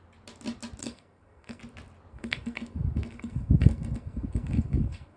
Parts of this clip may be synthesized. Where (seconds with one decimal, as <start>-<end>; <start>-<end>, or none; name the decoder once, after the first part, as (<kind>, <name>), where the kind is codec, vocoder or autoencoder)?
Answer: 0.8-1.6 (codec, SNAC); 2.1-5.2